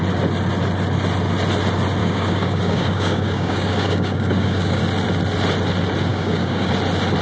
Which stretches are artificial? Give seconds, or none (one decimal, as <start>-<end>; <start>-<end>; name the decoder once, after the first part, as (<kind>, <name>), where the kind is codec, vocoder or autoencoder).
2.0-4.8 (codec, DAC); 6.1-6.7

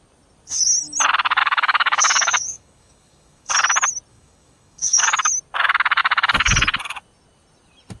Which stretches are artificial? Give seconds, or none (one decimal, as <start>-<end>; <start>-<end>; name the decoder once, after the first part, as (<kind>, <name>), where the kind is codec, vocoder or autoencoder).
1.4-3.5 (codec, DAC); 4.1-5.3

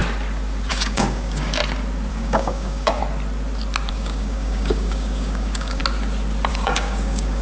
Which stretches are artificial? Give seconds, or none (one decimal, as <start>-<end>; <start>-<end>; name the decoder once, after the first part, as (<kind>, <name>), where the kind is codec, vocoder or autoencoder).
0.7-1.6 (codec, DAC); 2.1-3.0; 3.9-5.8; 6.5-7.4

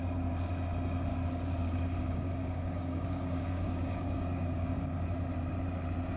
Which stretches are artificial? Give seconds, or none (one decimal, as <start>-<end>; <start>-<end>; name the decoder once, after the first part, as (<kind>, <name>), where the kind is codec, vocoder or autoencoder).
1.1-4.8 (codec, DAC)